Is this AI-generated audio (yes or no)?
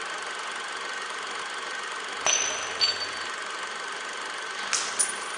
no